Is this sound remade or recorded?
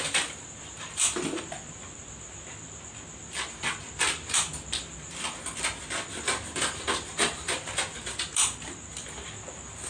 recorded